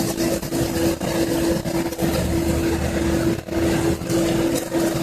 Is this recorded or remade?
recorded